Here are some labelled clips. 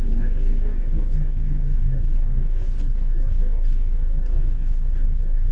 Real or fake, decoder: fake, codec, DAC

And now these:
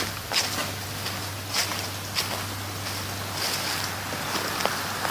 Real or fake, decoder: real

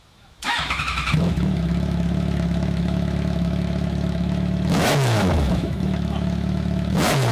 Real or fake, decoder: fake, autoencoder, DAC-VAE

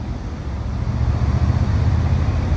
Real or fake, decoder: real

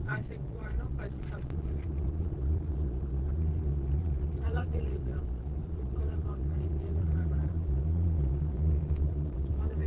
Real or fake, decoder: fake, vocoder, Vocos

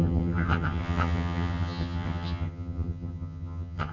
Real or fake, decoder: fake, vocoder, HiFi-GAN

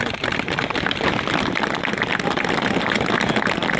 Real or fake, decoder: real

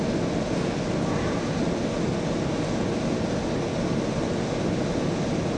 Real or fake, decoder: real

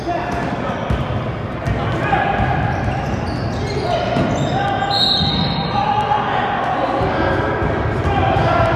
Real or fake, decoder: real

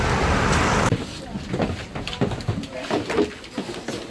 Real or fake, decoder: real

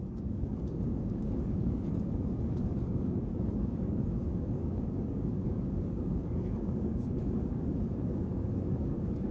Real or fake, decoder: fake, codec, DAC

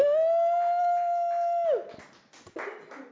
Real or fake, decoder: real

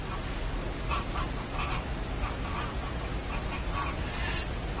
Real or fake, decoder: fake, vocoder, BigVGAN v2